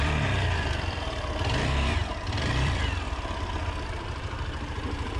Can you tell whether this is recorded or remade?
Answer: remade